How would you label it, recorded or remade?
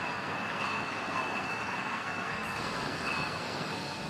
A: remade